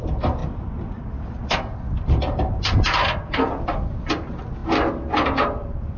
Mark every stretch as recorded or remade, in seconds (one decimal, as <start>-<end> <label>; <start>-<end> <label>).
0.0-6.0 recorded